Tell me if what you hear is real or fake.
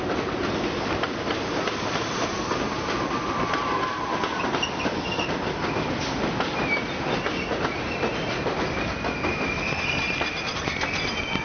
real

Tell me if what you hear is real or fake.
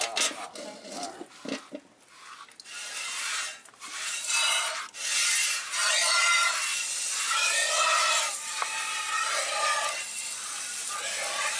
real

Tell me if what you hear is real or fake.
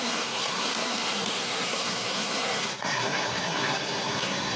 fake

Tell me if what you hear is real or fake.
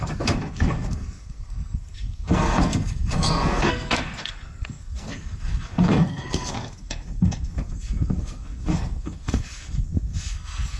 fake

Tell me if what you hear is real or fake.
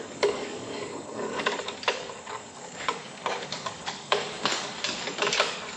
fake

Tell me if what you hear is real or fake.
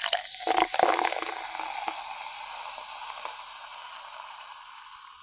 real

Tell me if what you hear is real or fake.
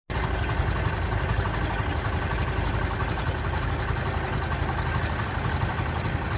real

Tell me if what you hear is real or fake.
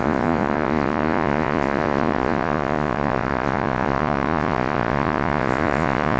fake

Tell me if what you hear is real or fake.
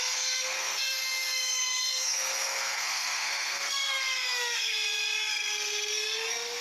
fake